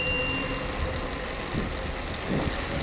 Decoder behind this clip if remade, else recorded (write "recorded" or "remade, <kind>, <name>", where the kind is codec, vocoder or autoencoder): recorded